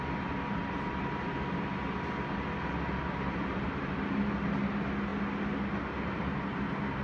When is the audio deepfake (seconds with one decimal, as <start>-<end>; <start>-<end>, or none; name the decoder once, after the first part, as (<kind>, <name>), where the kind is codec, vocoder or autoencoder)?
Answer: none